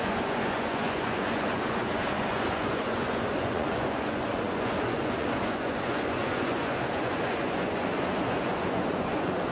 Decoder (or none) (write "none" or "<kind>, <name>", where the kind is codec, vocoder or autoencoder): vocoder, Vocos